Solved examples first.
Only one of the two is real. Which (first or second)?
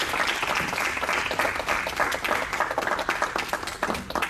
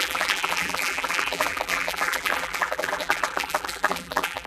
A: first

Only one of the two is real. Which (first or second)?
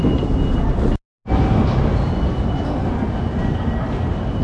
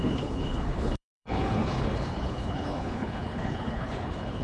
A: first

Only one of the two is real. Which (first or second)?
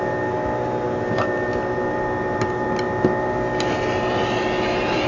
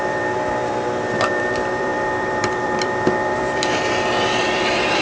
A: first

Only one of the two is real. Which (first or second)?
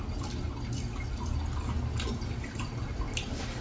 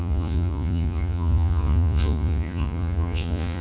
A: first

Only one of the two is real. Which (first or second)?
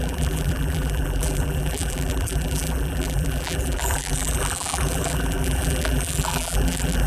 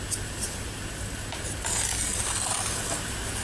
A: second